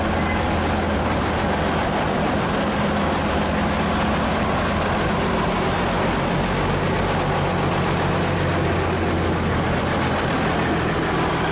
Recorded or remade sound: recorded